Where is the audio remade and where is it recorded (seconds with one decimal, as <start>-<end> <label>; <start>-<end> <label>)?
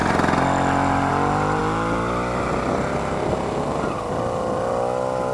0.0-1.1 recorded; 1.1-5.3 remade